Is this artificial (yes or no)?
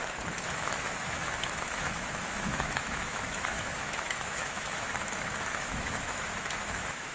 yes